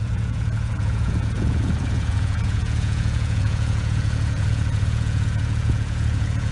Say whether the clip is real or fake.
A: fake